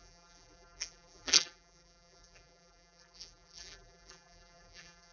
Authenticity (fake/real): fake